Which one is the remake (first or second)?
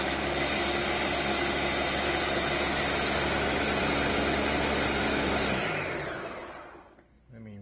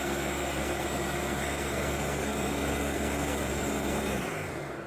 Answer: second